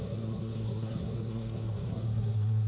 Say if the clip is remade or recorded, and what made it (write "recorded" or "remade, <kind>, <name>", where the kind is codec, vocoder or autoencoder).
remade, codec, SNAC